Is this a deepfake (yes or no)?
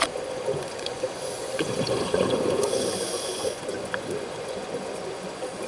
yes